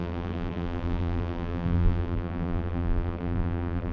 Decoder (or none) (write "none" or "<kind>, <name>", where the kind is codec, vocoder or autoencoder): vocoder, BigVGAN v2